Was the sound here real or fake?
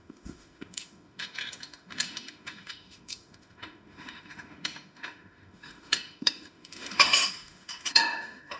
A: fake